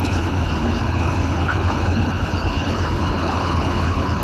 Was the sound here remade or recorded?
remade